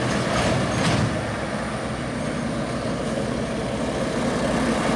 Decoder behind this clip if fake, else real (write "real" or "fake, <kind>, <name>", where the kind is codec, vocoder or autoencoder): real